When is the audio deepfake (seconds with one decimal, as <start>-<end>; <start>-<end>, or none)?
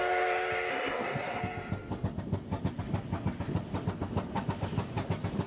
0.7-1.4